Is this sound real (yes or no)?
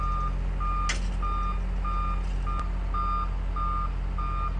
yes